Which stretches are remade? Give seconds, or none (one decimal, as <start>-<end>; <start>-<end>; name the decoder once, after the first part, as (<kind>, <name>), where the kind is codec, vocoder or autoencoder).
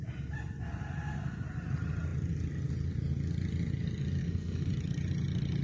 4.2-4.7 (codec, SNAC)